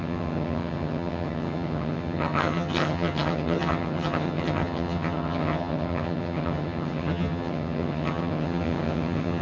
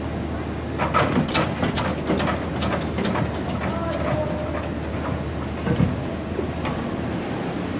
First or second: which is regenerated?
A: first